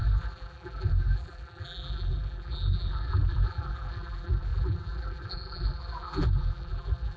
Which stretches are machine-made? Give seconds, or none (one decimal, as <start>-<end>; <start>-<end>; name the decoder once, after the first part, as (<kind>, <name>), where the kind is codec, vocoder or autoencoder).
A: 0.0-7.2 (vocoder, BigVGAN v2)